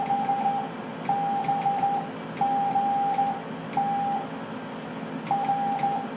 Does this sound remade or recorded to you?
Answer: recorded